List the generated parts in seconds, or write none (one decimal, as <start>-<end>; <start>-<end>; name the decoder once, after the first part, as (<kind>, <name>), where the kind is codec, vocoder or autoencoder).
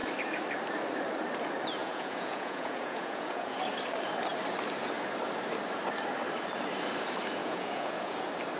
1.8-3.6 (vocoder, Vocos); 7.4-8.2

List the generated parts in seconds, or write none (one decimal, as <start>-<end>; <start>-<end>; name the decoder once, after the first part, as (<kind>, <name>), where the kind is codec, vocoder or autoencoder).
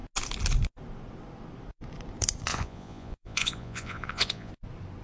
2.5-4.5 (vocoder, Vocos)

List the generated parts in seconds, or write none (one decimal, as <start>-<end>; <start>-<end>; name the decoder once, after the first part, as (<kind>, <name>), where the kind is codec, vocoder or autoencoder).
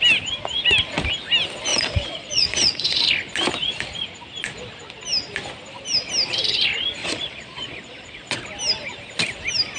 1.7-3.0 (vocoder, Vocos); 7.0-8.4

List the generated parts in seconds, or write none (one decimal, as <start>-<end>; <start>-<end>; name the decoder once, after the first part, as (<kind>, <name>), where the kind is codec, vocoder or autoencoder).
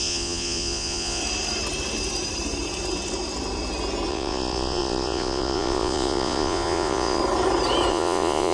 0.0-1.2 (vocoder, Vocos); 4.1-7.2; 7.9-8.5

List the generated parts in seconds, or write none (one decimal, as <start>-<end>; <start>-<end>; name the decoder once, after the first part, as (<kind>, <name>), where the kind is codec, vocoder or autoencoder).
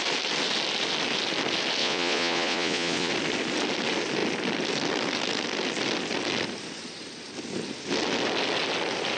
1.8-3.1 (vocoder, Vocos)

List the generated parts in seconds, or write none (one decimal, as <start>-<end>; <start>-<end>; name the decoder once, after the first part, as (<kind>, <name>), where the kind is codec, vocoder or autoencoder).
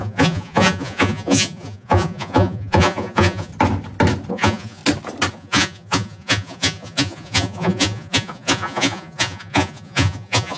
0.0-3.5 (vocoder, Vocos); 4.3-4.8; 5.3-10.6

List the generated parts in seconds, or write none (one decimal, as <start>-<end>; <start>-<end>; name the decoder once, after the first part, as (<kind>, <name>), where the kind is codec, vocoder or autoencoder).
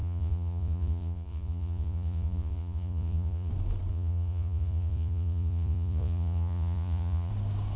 0.0-3.5 (vocoder, Vocos); 3.9-7.3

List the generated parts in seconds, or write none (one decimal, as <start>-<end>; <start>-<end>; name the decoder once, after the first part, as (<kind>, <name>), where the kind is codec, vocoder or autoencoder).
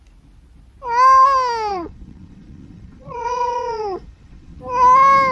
1.7-4.6 (vocoder, Vocos)